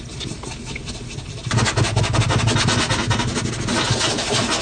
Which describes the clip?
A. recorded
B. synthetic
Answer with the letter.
A